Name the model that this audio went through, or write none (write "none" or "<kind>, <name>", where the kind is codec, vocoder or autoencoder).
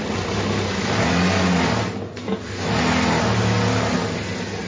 none